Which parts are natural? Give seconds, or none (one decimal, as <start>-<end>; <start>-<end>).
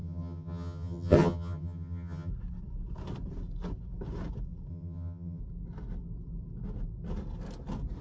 2.3-4.7; 5.4-8.0